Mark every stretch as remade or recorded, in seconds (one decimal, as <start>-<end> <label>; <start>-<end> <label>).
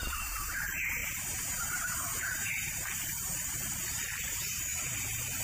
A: 0.0-1.0 recorded; 1.0-2.5 remade; 2.5-5.4 recorded